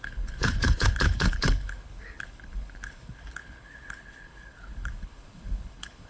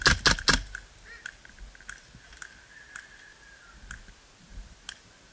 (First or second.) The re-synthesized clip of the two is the first